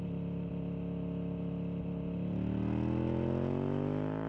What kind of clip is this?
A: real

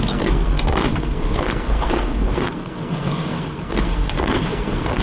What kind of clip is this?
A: fake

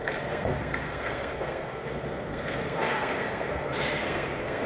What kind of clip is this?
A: fake